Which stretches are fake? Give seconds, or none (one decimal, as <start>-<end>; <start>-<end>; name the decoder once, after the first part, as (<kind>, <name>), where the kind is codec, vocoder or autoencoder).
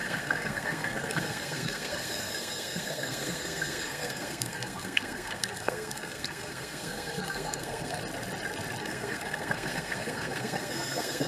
0.0-8.0 (codec, SNAC); 8.8-11.3